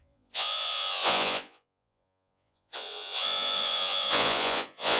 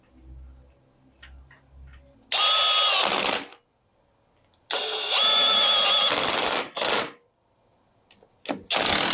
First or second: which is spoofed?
first